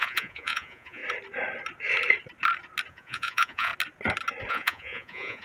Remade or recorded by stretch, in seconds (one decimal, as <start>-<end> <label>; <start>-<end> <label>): 0.0-1.0 remade; 1.0-2.9 recorded; 2.9-3.7 remade; 3.7-4.5 recorded; 4.5-5.4 remade